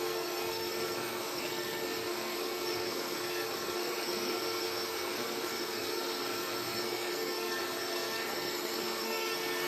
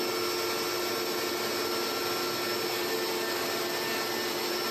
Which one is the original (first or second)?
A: second